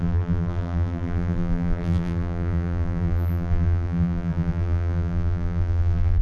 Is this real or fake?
fake